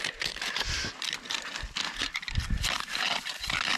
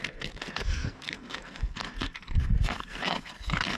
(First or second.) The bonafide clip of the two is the first